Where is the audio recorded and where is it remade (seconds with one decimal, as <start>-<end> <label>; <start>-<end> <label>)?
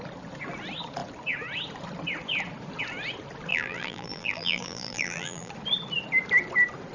0.0-3.5 recorded; 3.5-5.5 remade; 5.5-6.9 recorded